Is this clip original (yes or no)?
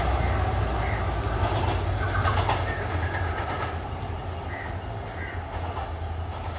yes